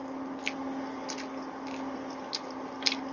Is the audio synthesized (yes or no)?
no